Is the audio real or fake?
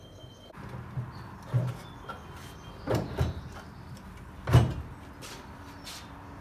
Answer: real